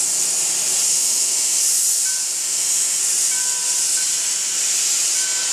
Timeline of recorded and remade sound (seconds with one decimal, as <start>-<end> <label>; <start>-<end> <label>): 0.0-0.9 recorded; 0.9-1.6 remade; 1.6-2.4 recorded; 2.4-3.0 remade; 3.0-5.5 recorded